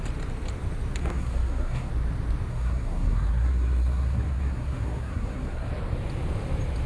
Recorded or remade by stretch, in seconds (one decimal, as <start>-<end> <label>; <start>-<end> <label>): 0.0-1.0 recorded; 1.0-1.9 remade; 1.9-2.5 recorded; 2.5-5.7 remade; 5.7-6.9 recorded